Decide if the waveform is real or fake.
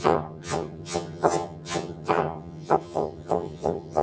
fake